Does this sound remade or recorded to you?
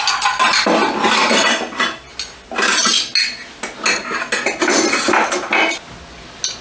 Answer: recorded